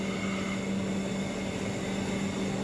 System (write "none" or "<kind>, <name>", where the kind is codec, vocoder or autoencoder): none